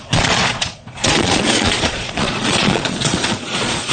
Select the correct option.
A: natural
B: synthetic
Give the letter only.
B